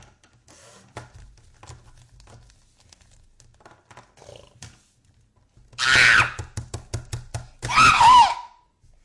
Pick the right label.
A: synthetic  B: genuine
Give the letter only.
B